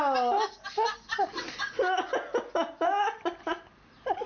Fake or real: real